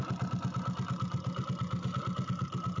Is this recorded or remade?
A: recorded